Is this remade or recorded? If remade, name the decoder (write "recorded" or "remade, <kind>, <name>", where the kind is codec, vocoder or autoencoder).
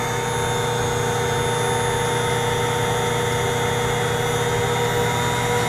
recorded